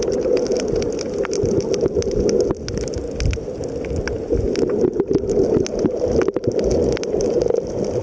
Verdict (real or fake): real